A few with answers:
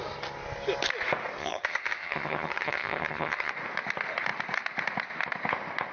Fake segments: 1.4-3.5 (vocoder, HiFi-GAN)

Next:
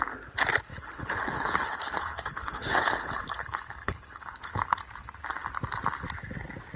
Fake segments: 0.7-4.8 (codec, HILCodec)

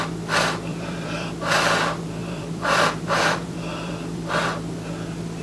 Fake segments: 0.7-1.3 (vocoder, BigVGAN v2); 2.2-4.3

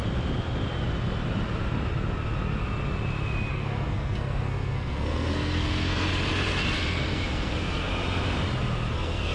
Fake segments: 3.5-6.1 (codec, SNAC); 6.9-7.9; 8.9-9.3